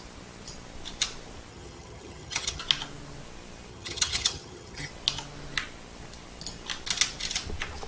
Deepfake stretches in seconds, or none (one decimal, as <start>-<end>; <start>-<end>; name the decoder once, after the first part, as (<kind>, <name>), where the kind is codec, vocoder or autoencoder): 1.5-2.6 (vocoder, HiFi-GAN); 3.7-4.9